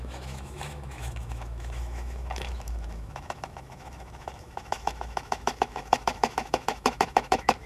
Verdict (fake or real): fake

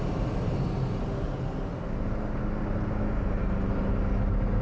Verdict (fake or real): real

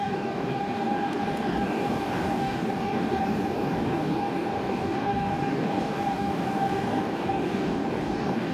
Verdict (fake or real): fake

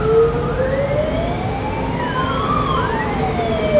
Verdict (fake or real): real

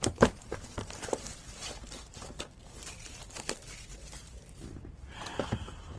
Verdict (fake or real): fake